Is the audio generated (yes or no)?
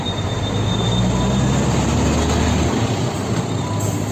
no